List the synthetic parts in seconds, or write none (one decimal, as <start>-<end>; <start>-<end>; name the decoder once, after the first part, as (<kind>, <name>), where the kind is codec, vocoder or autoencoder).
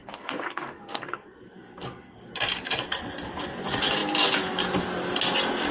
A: 0.0-2.3 (codec, SNAC)